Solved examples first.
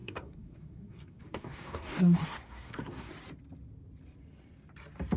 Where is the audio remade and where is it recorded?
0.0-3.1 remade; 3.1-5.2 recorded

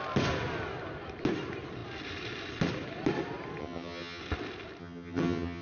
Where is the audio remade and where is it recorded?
0.0-3.6 recorded; 3.6-4.2 remade; 4.2-4.8 recorded; 4.8-5.6 remade